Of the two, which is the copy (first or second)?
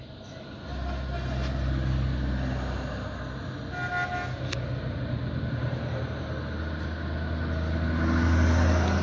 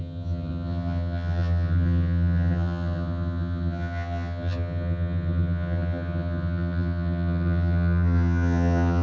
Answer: second